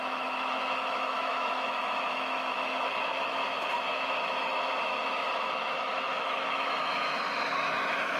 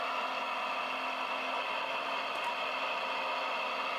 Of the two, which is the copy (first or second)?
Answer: first